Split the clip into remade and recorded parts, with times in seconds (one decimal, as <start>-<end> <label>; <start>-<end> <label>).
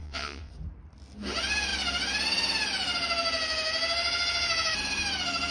0.0-0.5 remade; 0.5-5.5 recorded